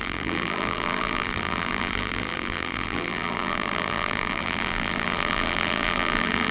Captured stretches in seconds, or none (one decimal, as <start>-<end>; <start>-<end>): none